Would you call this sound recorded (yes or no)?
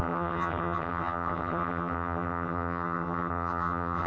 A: no